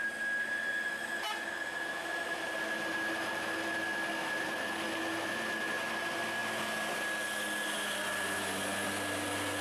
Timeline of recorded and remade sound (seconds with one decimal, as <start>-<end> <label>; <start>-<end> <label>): 0.0-6.4 recorded; 6.4-7.0 remade; 7.0-9.6 recorded